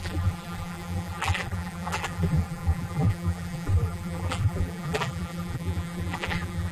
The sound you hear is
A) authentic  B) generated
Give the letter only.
B